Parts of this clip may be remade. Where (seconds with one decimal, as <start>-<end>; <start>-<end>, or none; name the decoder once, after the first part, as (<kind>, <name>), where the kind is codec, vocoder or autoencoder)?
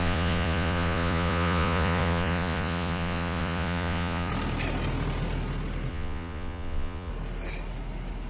0.0-4.3 (vocoder, Vocos); 5.9-7.1